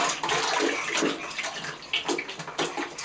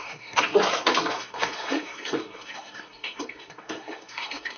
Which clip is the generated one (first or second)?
second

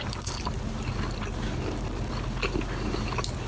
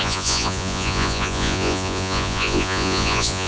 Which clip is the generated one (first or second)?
second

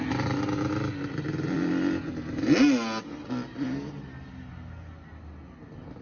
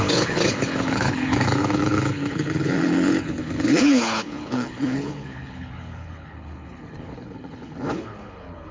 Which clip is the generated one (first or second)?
second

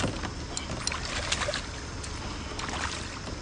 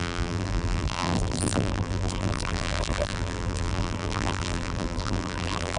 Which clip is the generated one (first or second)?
second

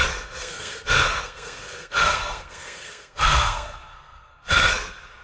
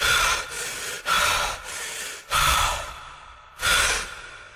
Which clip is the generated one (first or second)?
first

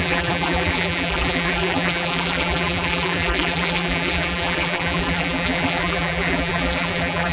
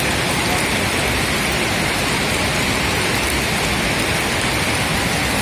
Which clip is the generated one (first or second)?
first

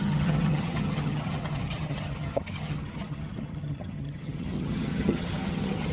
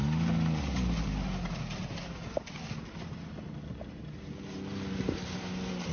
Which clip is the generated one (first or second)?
first